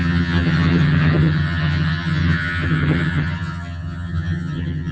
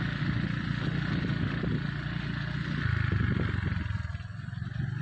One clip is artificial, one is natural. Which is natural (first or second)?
second